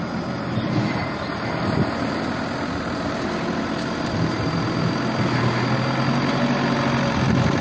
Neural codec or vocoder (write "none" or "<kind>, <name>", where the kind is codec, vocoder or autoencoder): none